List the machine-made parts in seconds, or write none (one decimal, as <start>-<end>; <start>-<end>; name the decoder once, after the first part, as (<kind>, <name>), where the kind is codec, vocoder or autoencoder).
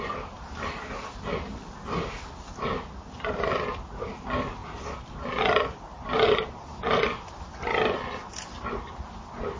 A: none